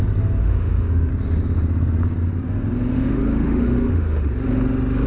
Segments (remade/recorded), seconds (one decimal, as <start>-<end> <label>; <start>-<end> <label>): 0.0-0.4 recorded; 0.4-1.1 remade; 1.1-2.9 recorded; 2.9-4.3 remade; 4.3-5.1 recorded